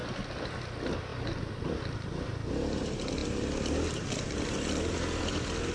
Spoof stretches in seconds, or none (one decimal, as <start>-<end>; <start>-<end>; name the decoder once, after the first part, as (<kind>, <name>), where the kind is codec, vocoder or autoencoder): none